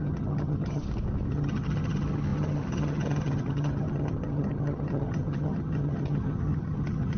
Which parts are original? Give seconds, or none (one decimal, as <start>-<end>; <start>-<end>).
0.8-1.3

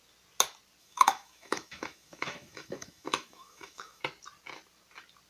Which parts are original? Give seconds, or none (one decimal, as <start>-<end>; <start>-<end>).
0.0-0.8; 4.0-5.3

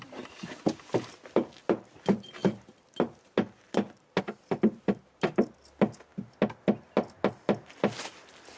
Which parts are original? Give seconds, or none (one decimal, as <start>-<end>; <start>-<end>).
0.0-8.6